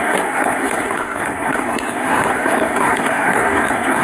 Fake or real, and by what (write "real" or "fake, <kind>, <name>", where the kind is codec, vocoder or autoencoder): fake, codec, SNAC